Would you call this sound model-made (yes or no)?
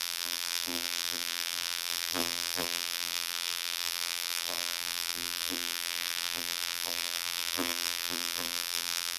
yes